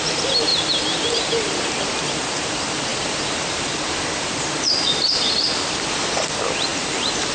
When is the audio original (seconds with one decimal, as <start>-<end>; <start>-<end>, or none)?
6.7-7.3